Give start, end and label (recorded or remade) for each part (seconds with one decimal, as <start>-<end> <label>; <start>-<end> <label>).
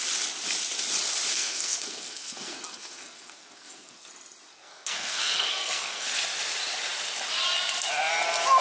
0.0-1.3 recorded; 1.3-4.1 remade; 4.1-4.5 recorded; 4.5-6.1 remade; 6.1-8.6 recorded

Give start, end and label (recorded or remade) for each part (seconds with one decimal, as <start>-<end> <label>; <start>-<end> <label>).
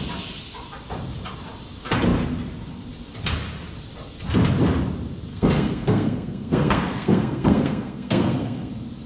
0.0-5.3 recorded; 5.3-8.7 remade; 8.7-9.1 recorded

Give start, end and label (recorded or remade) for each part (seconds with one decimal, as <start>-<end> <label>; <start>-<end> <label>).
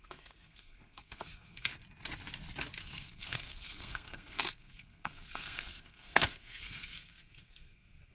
0.0-1.7 remade; 1.7-2.8 recorded; 2.8-8.1 remade